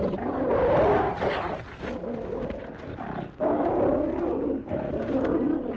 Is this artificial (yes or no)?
no